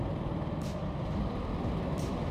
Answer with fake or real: fake